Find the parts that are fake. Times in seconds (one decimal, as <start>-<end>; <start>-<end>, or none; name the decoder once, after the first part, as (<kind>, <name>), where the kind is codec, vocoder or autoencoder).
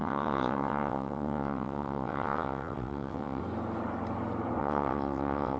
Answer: 0.0-3.4 (vocoder, WaveNeXt); 4.6-5.6